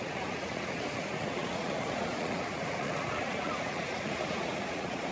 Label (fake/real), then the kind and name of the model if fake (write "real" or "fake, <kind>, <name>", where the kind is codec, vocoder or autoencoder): fake, vocoder, Vocos